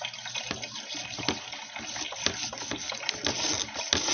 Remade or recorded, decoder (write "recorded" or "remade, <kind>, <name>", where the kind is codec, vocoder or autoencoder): recorded